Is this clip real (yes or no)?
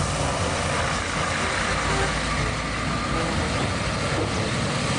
yes